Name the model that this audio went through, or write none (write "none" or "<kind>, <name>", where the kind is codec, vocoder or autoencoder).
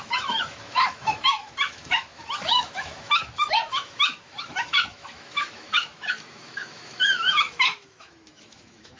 autoencoder, DAC-VAE